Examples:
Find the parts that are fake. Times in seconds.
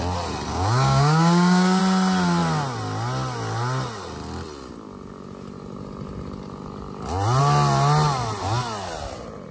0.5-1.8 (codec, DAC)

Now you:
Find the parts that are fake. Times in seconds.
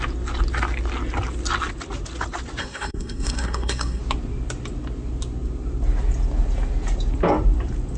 2.6-4.0 (codec, SNAC)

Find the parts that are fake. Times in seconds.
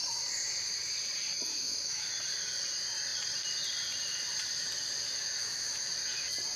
1.5-2.1 (autoencoder, DAC-VAE); 5.4-5.9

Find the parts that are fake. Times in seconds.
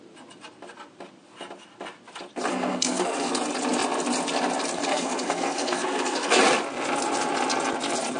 2.5-3.3 (codec, SNAC); 4.9-6.4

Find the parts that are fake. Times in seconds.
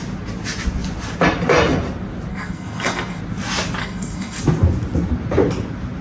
2.3-3.2 (codec, SNAC); 3.8-4.4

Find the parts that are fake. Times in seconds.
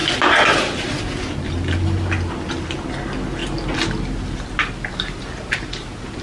none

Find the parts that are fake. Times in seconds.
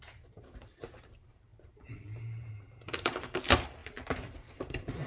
0.0-1.5 (vocoder, BigVGAN v2); 2.5-3.8; 4.3-5.1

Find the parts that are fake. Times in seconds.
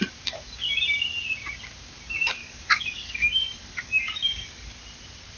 2.4-4.7 (codec, DAC)